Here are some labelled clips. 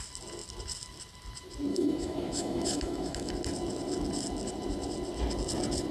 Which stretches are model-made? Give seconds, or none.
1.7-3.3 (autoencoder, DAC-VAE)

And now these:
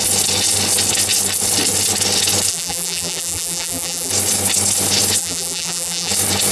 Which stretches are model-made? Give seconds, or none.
2.5-4.1 (vocoder, BigVGAN v2); 5.2-6.1

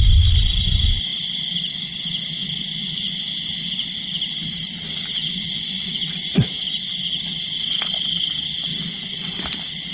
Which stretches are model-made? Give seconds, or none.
2.4-3.1 (vocoder, Vocos); 5.2-6.3; 8.7-9.4